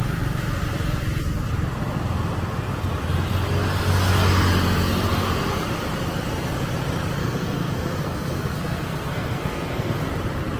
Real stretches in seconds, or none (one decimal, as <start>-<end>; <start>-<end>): 0.0-7.2; 10.0-10.6